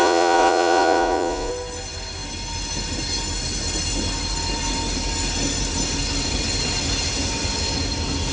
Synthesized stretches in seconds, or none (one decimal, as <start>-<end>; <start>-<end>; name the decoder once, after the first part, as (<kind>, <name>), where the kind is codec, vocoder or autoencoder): 0.0-1.5 (vocoder, Vocos)